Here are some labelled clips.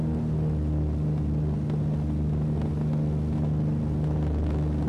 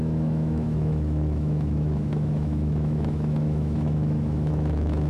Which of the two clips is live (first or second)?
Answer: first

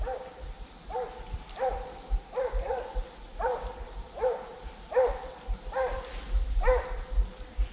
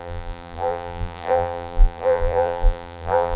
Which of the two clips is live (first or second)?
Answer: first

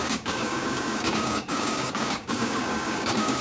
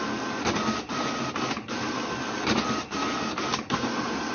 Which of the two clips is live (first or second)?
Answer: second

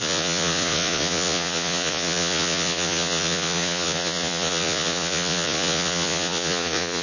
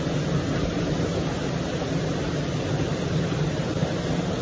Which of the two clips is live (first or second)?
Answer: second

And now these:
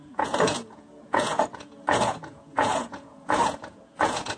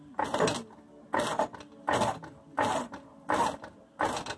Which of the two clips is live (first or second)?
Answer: second